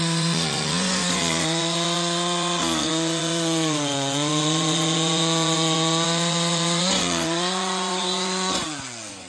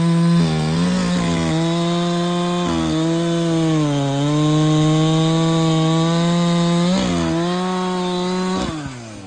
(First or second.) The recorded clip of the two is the second